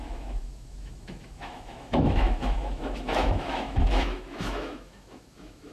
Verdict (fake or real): fake